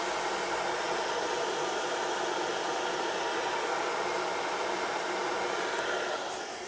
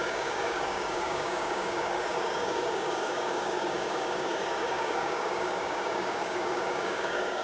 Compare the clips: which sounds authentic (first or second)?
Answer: first